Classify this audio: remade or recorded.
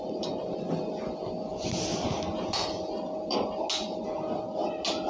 recorded